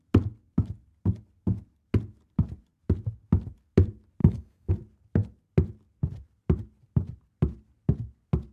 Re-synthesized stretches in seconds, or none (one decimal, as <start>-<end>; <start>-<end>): 4.2-4.7